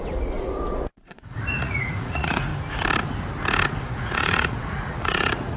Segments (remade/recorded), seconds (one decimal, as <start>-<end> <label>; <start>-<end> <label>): 0.0-2.5 remade; 2.5-3.8 recorded; 3.8-5.6 remade

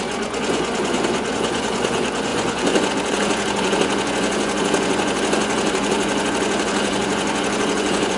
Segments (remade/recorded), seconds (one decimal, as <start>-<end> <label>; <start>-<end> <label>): 0.0-8.2 remade

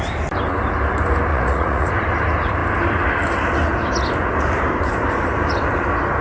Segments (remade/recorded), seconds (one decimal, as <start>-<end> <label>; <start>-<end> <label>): 0.0-1.3 recorded; 1.3-1.9 remade; 1.9-6.2 recorded

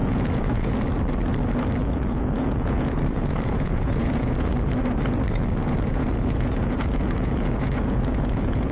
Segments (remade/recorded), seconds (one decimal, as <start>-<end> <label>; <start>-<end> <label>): 0.0-0.8 remade; 0.8-1.8 recorded; 1.8-4.5 remade; 4.5-5.6 recorded; 5.6-8.7 remade

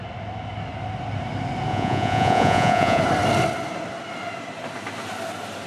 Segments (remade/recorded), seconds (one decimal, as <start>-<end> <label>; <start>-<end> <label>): 0.0-1.7 recorded; 1.7-3.0 remade; 3.0-5.7 recorded

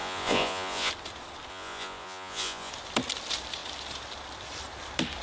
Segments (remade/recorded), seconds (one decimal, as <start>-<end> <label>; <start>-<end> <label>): 0.0-0.9 remade; 0.9-1.5 recorded; 1.5-2.7 remade; 2.7-5.2 recorded

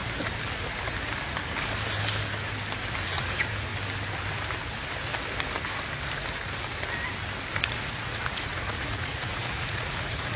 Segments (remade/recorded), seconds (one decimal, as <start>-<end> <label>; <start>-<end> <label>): 0.0-3.0 recorded; 3.0-3.7 remade; 3.7-7.6 recorded; 7.6-10.4 remade